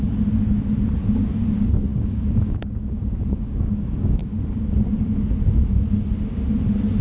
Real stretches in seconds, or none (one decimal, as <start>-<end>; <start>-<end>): 0.0-1.9; 4.2-7.0